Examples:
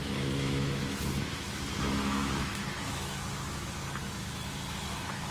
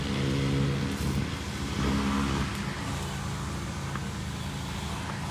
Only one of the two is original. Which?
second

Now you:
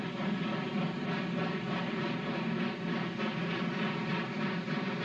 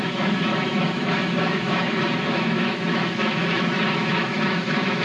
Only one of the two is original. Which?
first